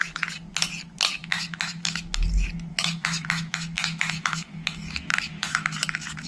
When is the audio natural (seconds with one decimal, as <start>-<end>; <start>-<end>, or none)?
0.0-1.2; 2.1-2.7